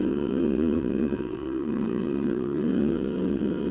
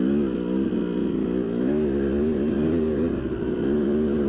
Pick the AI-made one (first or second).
first